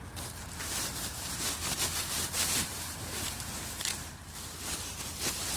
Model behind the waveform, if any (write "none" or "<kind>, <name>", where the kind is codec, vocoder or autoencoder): vocoder, BigVGAN v2